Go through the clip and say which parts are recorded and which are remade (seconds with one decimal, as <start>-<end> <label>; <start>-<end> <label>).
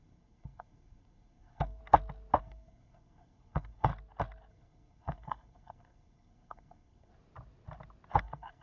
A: 0.0-1.8 remade; 1.8-2.4 recorded; 2.4-3.9 remade; 3.9-4.5 recorded; 4.5-7.1 remade; 7.1-8.2 recorded; 8.2-8.6 remade